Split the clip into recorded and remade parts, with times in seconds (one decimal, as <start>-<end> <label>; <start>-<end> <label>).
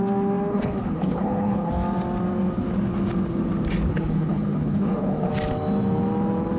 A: 0.0-0.5 recorded; 0.5-1.7 remade; 1.7-3.9 recorded; 3.9-5.3 remade; 5.3-6.6 recorded